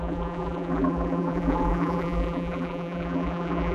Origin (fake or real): fake